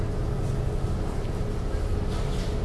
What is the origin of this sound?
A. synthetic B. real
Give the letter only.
B